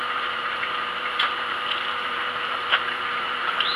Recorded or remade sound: remade